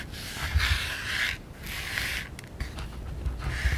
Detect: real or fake real